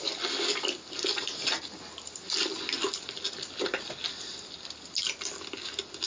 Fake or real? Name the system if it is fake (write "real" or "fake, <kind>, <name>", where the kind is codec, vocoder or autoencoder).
real